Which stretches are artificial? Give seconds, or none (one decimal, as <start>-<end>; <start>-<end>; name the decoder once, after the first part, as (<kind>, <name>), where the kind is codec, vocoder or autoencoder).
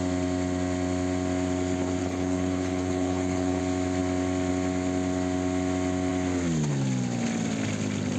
2.0-3.6 (codec, HILCodec)